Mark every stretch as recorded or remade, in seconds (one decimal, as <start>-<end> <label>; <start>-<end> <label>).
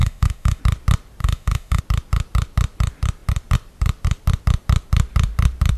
0.0-0.6 remade; 0.6-1.2 recorded; 1.2-1.8 remade; 1.8-5.8 recorded